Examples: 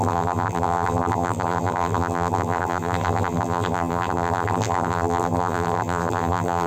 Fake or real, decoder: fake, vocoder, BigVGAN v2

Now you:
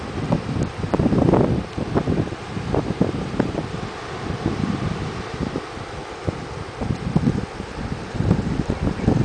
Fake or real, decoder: real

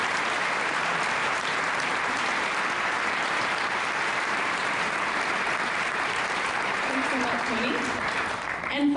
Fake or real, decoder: fake, vocoder, BigVGAN v2